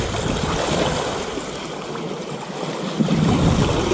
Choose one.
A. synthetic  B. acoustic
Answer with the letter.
B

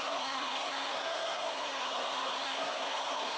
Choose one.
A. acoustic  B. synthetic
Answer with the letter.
B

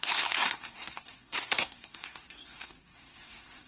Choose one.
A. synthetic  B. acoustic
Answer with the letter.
A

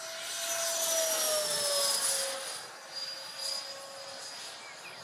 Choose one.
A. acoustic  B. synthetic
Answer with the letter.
A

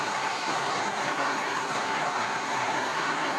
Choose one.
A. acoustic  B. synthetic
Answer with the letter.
B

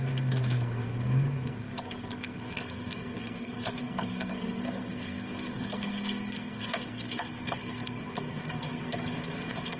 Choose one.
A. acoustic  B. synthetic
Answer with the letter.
B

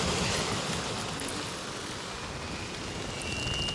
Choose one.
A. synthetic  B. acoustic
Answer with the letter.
B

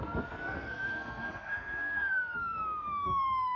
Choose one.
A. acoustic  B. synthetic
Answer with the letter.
B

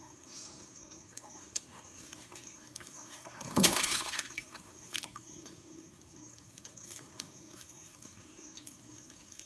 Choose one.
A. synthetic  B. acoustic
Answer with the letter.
A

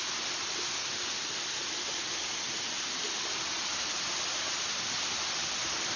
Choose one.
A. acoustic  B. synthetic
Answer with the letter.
A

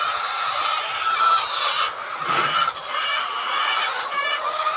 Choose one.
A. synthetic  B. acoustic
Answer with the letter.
B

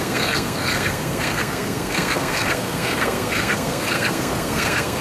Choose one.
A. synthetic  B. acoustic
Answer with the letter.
A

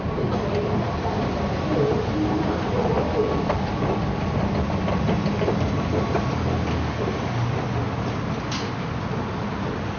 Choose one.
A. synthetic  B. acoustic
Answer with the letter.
B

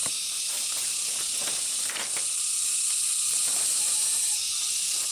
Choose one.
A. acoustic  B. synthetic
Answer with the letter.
A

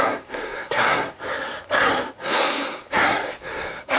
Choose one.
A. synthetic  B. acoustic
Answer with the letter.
A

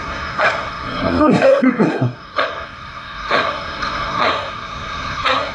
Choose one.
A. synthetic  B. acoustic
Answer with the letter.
A